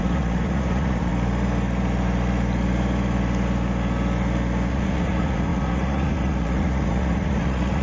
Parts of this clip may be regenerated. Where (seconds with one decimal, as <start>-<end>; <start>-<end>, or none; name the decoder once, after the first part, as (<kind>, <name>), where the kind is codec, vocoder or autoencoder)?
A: 0.0-1.1 (vocoder, Vocos); 4.7-7.8